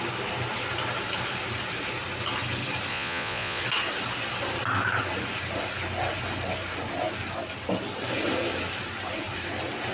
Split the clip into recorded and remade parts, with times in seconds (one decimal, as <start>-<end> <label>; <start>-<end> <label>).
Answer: 0.0-2.9 recorded; 2.9-3.6 remade; 3.6-9.9 recorded